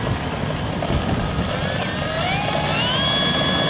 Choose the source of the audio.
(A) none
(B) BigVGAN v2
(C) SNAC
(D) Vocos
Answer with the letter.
A